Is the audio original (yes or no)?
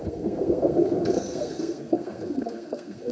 no